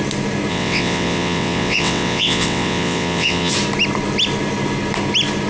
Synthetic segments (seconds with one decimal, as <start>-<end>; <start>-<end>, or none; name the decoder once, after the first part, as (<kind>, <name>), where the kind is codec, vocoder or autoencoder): 0.5-3.5 (vocoder, WaveNeXt)